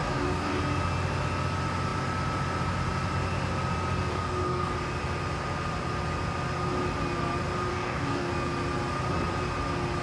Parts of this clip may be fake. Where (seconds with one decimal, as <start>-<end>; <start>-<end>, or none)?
0.0-0.6; 4.1-4.7; 7.7-8.3